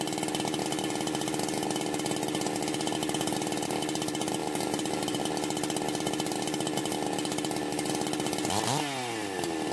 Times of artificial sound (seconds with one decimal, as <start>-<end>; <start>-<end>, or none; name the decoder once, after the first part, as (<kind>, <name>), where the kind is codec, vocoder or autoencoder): 4.4-5.2 (vocoder, BigVGAN v2)